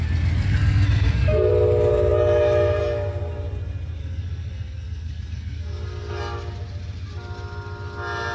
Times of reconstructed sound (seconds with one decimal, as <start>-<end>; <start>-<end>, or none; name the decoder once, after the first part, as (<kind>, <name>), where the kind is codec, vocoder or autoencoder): 0.5-1.5 (codec, SNAC); 4.0-6.2